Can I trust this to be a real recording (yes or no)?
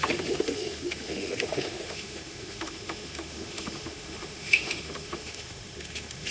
no